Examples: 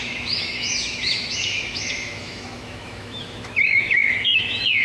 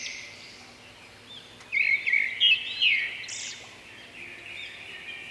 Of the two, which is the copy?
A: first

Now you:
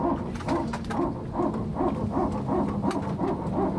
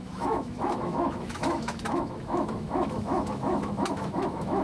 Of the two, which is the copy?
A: second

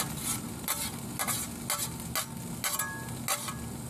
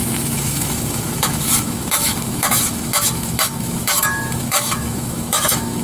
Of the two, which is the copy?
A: second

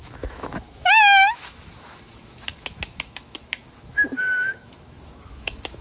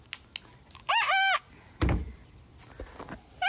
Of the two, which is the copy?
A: first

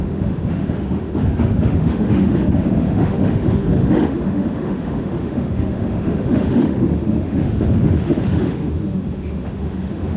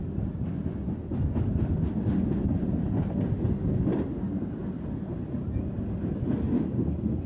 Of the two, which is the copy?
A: first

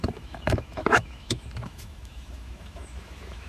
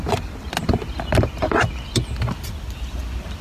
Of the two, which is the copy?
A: first